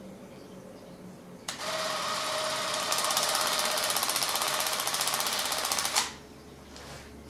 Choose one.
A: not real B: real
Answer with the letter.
B